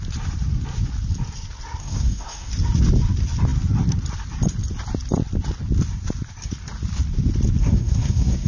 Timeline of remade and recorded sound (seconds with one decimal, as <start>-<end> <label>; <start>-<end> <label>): 0.0-1.8 recorded; 1.8-2.5 remade; 2.5-7.6 recorded; 7.6-8.5 remade